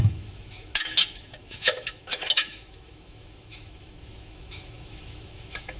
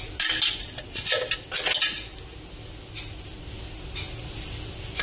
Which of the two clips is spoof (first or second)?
first